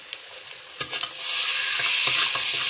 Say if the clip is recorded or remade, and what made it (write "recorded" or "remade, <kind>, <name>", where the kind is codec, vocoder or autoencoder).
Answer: recorded